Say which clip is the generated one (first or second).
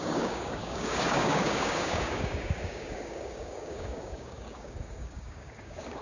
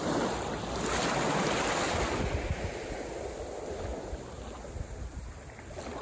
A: first